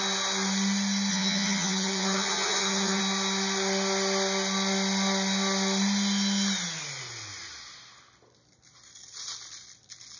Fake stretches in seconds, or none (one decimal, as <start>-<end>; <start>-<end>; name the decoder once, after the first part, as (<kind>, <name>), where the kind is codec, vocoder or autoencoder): 1.1-3.0 (vocoder, HiFi-GAN)